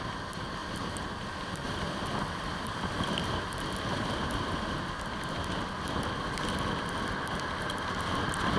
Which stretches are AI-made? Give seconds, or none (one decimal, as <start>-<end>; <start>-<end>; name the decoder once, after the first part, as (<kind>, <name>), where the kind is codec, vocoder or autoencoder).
0.6-1.2 (vocoder, BigVGAN v2)